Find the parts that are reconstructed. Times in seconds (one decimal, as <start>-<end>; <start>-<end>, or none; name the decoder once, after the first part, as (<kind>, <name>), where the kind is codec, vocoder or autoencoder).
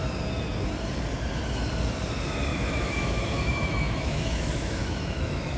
2.5-5.6 (autoencoder, DAC-VAE)